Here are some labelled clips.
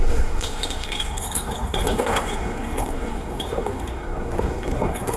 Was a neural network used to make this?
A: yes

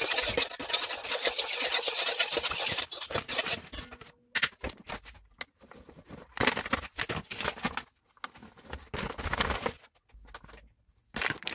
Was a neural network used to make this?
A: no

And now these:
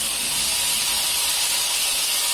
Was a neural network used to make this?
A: no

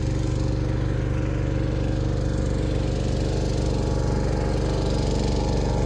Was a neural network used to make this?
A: no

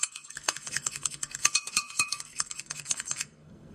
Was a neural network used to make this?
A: yes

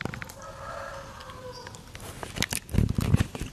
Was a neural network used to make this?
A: no